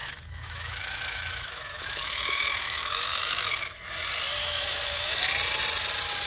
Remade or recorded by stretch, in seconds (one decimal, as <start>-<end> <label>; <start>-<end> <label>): 0.0-3.8 remade; 3.8-4.4 recorded; 4.4-5.2 remade; 5.2-6.3 recorded